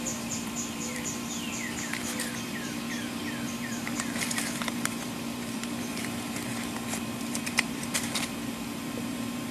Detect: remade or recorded remade